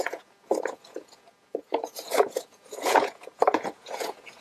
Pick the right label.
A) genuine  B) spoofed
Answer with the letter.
B